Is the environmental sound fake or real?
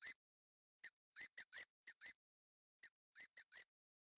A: real